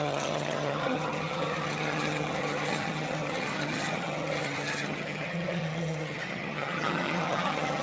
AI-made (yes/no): yes